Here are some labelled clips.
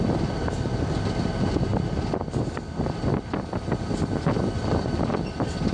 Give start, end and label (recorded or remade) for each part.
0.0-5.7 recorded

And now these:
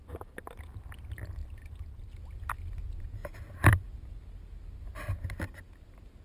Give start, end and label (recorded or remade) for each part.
0.0-6.2 recorded

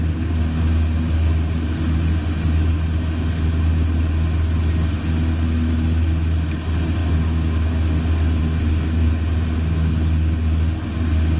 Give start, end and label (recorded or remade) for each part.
0.0-11.4 recorded

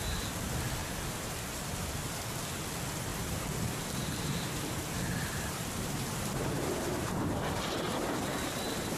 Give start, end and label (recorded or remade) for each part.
0.0-0.8 recorded; 0.8-2.4 remade; 2.4-3.1 recorded; 3.1-7.1 remade; 7.1-9.0 recorded

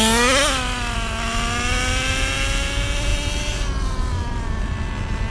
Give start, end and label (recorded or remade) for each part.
0.0-5.3 recorded

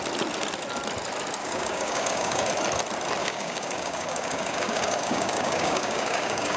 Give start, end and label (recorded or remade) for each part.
0.0-1.4 recorded; 1.4-2.5 remade; 2.5-3.2 recorded; 3.2-6.6 remade

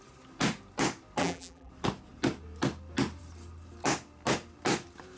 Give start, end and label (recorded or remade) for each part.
0.0-1.2 recorded; 1.2-1.7 remade; 1.7-5.2 recorded